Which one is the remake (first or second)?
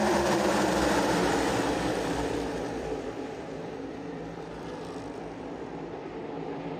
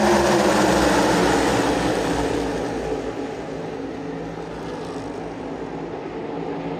first